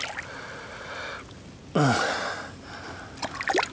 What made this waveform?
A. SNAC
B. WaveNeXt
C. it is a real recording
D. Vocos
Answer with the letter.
C